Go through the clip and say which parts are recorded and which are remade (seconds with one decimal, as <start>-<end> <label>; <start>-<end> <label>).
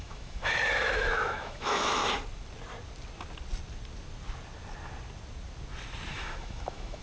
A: 0.0-2.0 remade; 2.0-6.1 recorded; 6.1-7.0 remade